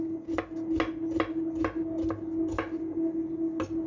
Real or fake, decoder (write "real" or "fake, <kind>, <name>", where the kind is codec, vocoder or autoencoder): real